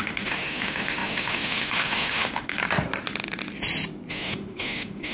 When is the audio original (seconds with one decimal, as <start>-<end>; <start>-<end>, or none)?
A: 2.6-4.1